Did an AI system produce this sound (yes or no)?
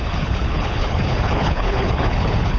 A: yes